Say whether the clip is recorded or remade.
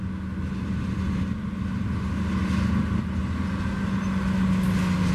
recorded